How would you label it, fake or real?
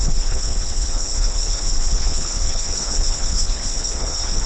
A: fake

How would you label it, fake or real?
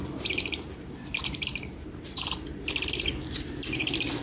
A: fake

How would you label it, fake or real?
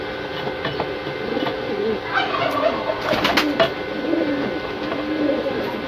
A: real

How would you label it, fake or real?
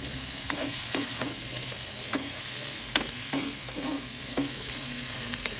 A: fake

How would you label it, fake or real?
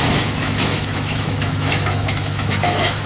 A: fake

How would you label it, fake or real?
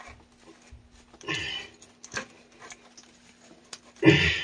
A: real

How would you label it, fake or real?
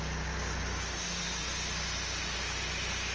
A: real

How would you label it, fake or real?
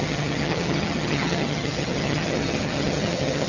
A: fake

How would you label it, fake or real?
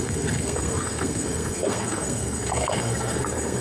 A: fake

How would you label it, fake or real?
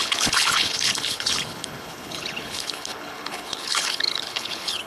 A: fake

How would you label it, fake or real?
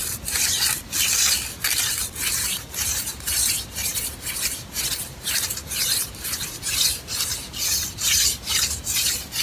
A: fake